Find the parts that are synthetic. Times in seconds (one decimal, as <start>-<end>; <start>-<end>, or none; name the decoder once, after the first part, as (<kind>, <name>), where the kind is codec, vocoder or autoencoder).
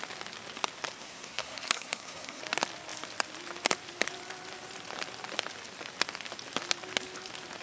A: 1.0-2.4 (codec, SNAC)